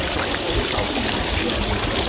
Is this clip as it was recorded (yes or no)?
no